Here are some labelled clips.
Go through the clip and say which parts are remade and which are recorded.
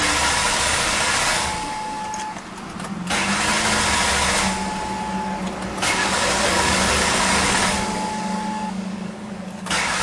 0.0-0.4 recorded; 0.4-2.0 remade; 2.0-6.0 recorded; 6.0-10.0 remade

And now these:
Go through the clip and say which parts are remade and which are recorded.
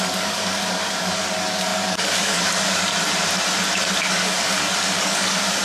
0.0-2.9 remade; 2.9-4.1 recorded; 4.1-5.6 remade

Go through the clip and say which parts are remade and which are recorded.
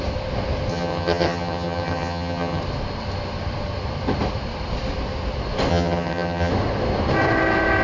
0.0-0.7 recorded; 0.7-2.6 remade; 2.6-5.7 recorded; 5.7-6.5 remade; 6.5-7.8 recorded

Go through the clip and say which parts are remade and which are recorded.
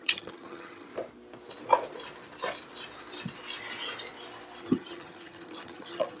0.0-0.9 remade; 0.9-4.6 recorded; 4.6-6.2 remade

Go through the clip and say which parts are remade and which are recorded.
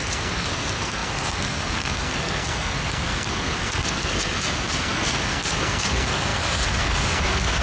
0.0-7.6 remade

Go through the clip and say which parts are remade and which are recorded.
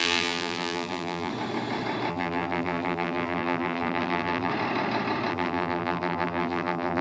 0.0-1.3 remade; 1.3-2.1 recorded; 2.1-4.5 remade; 4.5-5.3 recorded; 5.3-7.0 remade